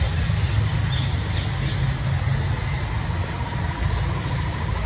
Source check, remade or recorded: recorded